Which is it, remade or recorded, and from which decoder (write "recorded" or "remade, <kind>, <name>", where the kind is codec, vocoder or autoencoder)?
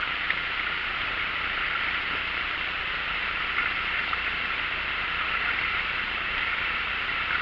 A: recorded